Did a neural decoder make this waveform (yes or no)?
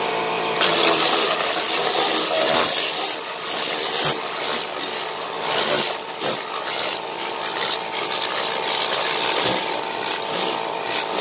no